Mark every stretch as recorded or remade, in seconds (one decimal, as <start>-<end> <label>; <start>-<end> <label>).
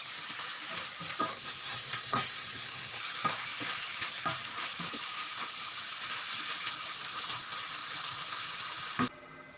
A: 0.0-1.3 recorded; 1.3-3.0 remade; 3.0-9.6 recorded